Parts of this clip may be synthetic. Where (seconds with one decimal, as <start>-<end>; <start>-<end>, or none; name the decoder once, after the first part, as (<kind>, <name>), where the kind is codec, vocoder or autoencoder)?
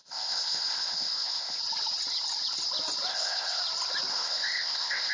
0.0-1.6 (codec, ZipCodec); 3.1-3.6; 4.1-5.1